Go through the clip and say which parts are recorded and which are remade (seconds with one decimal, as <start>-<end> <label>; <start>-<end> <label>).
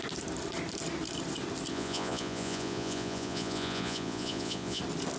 0.0-1.7 recorded; 1.7-4.8 remade; 4.8-5.2 recorded